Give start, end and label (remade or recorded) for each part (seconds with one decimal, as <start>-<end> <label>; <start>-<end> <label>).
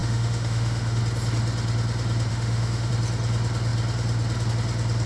0.0-1.0 remade; 1.0-2.3 recorded; 2.3-2.9 remade; 2.9-5.1 recorded